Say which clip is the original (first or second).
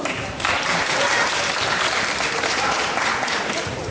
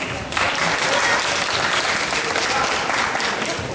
second